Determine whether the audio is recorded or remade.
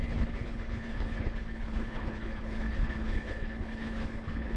remade